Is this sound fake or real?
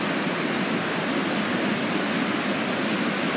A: real